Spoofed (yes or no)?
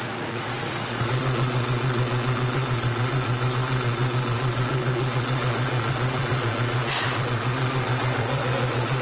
yes